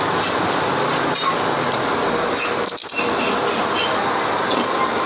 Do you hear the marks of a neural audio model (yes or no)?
no